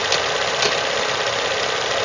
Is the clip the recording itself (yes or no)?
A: yes